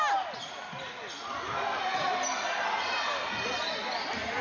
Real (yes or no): yes